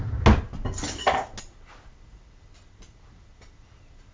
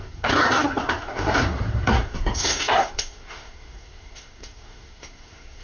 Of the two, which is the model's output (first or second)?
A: second